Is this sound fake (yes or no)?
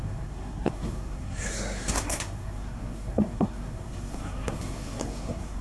yes